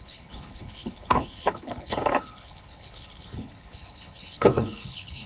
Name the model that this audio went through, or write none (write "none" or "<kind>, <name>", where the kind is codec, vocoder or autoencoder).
codec, HILCodec